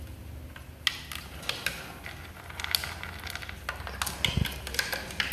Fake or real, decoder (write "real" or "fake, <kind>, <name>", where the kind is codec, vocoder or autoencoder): real